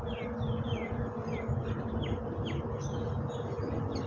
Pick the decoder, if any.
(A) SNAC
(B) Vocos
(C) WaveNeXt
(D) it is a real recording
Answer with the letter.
D